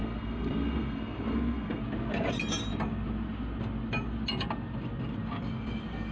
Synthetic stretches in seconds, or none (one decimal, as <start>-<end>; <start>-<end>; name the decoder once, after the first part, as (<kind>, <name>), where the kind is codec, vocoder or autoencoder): 0.0-1.8 (codec, SNAC)